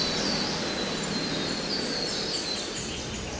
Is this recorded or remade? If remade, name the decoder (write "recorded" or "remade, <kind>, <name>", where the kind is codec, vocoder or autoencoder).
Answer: recorded